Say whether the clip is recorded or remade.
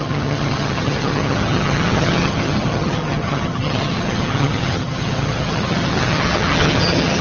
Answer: remade